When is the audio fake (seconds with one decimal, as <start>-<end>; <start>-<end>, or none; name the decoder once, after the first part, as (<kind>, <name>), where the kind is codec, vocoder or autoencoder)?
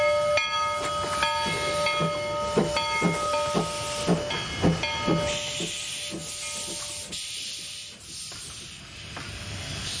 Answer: none